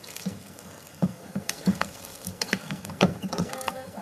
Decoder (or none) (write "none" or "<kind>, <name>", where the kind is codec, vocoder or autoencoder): codec, SNAC